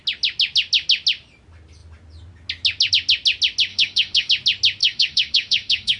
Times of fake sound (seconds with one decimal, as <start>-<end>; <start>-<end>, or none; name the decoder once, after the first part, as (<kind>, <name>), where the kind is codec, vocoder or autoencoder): 3.7-4.3 (autoencoder, DAC-VAE); 4.8-6.0

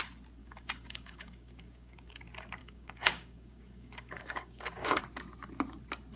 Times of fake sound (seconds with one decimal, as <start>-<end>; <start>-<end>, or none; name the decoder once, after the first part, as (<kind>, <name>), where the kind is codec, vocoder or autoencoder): 0.4-2.2 (codec, DAC); 2.6-5.0

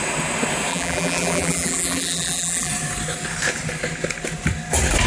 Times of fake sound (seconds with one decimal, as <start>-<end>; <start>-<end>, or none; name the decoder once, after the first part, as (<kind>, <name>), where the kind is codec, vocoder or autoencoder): 0.7-2.7 (vocoder, BigVGAN v2)